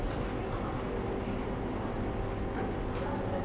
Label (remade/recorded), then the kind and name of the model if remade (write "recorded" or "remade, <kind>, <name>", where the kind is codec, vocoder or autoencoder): recorded